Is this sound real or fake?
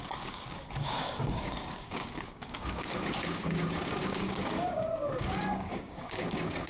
fake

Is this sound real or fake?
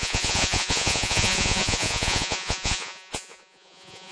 fake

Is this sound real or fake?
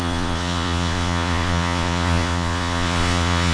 fake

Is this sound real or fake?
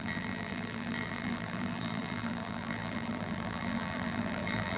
fake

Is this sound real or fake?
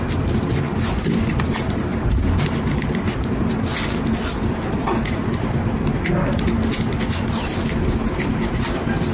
real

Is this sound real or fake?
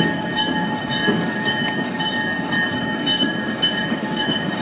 fake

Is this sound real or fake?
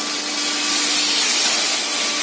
real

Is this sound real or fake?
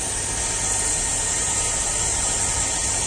real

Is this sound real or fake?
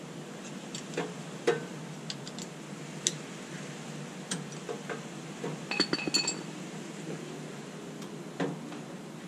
real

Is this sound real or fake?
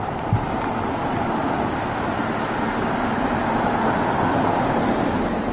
real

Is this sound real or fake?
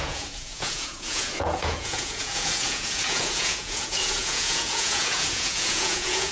fake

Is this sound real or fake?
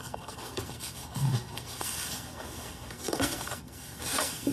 fake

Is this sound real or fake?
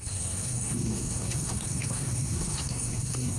fake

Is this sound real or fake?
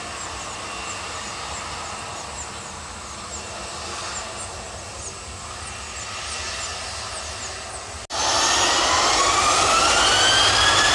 real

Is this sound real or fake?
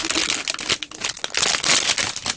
real